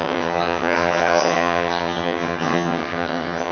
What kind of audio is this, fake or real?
fake